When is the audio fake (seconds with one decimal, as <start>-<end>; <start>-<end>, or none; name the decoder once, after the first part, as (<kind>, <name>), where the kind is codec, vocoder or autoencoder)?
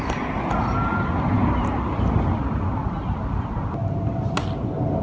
none